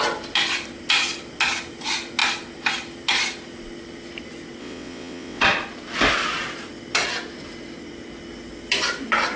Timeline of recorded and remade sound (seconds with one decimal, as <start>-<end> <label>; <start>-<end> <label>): 0.0-4.6 recorded; 4.6-5.4 remade; 5.4-9.4 recorded